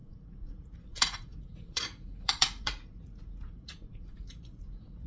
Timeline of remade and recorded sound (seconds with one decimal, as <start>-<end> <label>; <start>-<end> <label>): 0.0-5.1 remade